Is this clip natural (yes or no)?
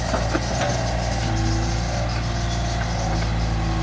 yes